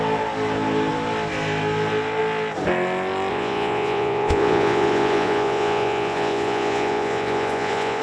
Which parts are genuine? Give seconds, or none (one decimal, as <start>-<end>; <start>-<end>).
0.0-3.3